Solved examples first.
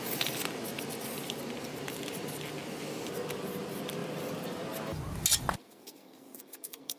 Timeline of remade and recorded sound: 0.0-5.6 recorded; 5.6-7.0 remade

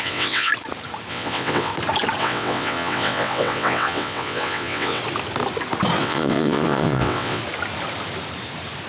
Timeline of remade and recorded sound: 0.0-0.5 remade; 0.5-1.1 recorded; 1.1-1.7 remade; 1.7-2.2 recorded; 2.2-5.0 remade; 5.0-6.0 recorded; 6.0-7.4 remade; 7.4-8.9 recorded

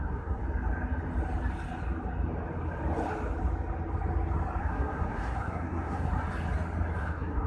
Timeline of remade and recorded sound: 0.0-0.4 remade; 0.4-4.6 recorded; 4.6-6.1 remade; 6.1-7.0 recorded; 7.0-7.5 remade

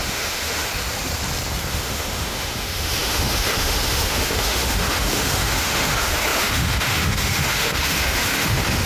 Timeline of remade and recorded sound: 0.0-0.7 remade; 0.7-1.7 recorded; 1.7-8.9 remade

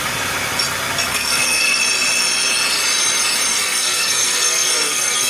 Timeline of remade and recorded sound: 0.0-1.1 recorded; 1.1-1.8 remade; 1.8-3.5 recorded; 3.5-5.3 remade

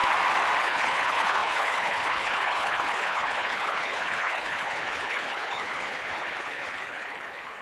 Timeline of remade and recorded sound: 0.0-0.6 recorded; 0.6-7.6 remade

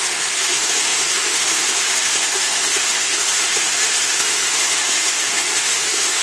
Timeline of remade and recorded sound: 0.0-6.2 remade